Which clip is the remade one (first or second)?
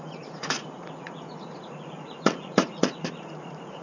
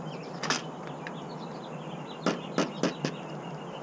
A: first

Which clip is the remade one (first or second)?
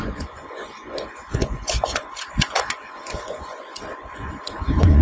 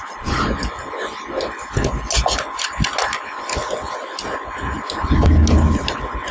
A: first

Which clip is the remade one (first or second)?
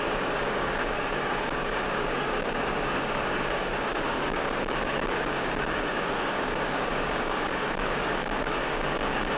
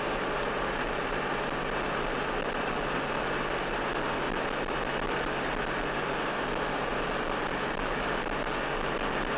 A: first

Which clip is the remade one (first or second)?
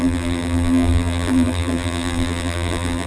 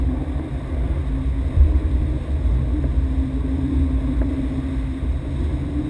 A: first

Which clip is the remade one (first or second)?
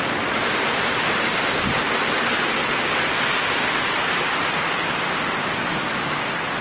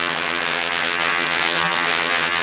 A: second